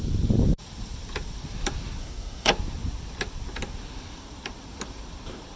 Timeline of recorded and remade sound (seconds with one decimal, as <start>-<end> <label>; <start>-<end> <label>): 0.0-2.0 recorded; 2.0-2.5 remade; 2.5-5.6 recorded